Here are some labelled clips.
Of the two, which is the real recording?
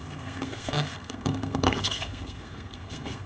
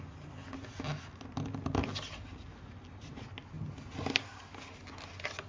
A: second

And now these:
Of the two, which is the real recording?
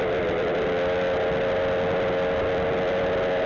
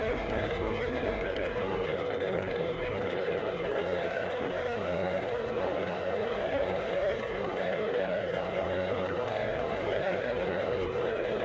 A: first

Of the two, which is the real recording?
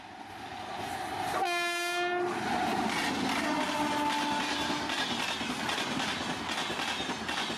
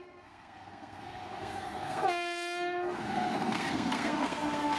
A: first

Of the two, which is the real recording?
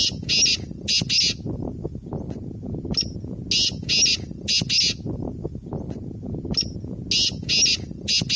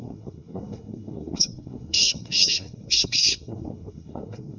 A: first